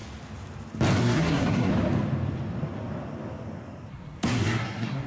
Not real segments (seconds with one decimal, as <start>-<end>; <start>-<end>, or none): 1.0-1.7; 3.9-5.1